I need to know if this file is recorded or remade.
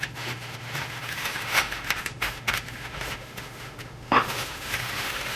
remade